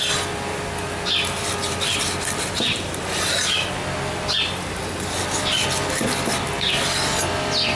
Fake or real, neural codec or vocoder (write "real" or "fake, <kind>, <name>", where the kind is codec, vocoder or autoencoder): real